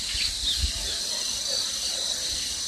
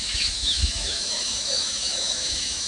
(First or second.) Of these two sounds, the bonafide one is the first